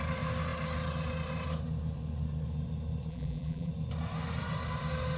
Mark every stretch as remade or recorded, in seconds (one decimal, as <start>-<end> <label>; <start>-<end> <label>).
0.0-3.1 recorded; 3.1-3.7 remade; 3.7-5.2 recorded